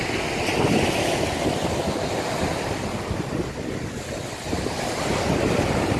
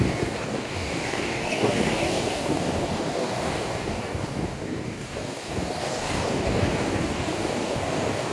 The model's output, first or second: second